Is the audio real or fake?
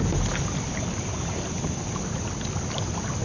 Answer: real